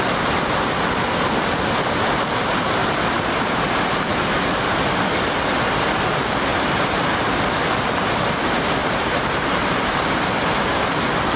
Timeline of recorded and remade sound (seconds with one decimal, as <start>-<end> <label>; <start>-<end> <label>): 0.0-2.8 recorded; 2.8-3.6 remade; 3.6-4.1 recorded; 4.1-5.1 remade; 5.1-6.5 recorded; 6.5-7.0 remade; 7.0-8.8 recorded; 8.8-10.6 remade; 10.6-11.4 recorded